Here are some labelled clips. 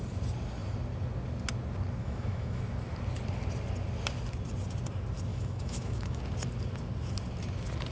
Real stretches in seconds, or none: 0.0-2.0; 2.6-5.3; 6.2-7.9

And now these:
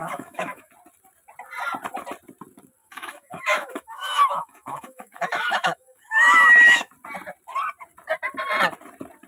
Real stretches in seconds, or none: 0.7-2.8; 6.9-9.3

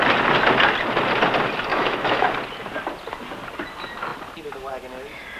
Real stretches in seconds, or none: 0.0-1.7; 2.3-5.4

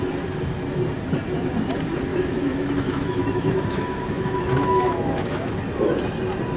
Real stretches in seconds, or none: 0.0-2.1; 5.5-6.6

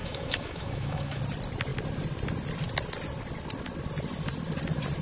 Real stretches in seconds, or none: 1.2-5.0